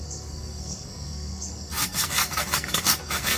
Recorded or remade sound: remade